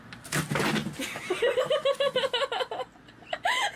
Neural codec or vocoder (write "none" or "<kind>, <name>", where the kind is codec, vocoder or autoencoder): none